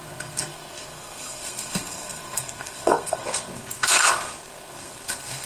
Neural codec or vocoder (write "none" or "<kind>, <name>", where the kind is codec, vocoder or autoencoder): codec, SNAC